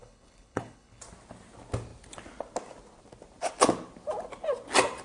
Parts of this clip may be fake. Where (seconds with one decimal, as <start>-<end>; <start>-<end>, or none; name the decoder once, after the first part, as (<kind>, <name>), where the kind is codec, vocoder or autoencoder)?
0.0-1.0 (codec, HILCodec)